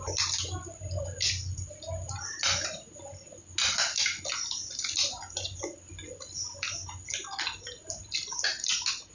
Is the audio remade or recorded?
recorded